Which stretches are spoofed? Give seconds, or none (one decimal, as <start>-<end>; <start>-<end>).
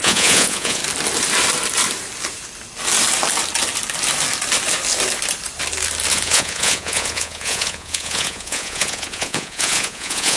0.0-0.8; 6.1-10.4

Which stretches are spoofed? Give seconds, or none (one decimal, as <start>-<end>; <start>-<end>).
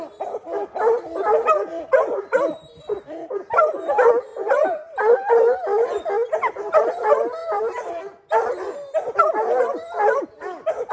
0.0-4.3; 6.8-10.9